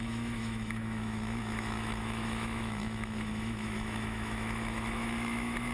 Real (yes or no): no